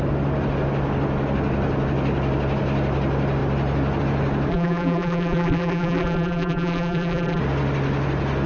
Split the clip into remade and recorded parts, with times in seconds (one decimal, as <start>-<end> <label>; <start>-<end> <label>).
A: 0.0-4.5 recorded; 4.5-7.4 remade; 7.4-8.5 recorded